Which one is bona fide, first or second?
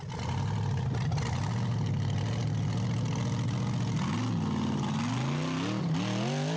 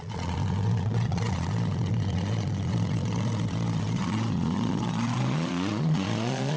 first